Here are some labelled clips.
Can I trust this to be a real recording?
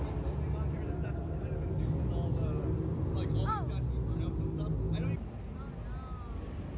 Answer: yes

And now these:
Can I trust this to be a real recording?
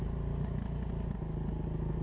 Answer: yes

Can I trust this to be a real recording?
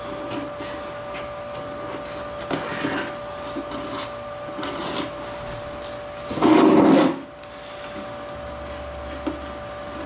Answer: yes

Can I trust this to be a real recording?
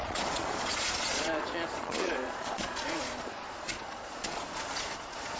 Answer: no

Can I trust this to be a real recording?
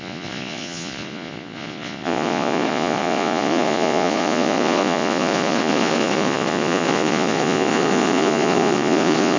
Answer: no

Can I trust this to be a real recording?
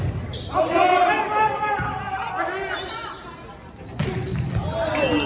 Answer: yes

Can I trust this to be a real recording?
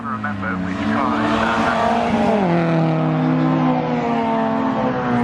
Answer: yes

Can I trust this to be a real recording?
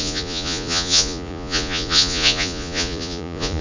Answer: no